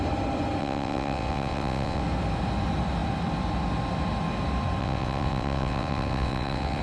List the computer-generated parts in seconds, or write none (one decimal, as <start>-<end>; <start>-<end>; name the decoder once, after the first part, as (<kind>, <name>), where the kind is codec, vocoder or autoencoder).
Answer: 0.6-2.0 (vocoder, WaveNeXt); 4.8-6.8